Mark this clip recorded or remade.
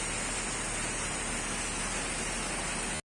recorded